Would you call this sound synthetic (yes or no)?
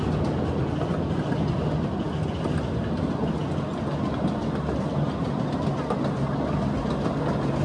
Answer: no